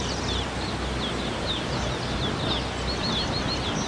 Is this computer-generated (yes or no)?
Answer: no